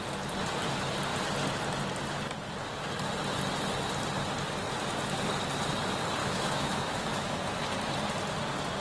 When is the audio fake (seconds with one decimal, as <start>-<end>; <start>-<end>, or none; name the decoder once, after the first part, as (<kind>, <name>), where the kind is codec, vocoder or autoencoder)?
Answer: 6.2-7.4 (autoencoder, DAC-VAE)